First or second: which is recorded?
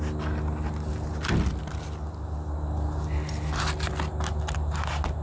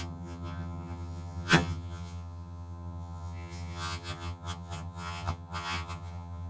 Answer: first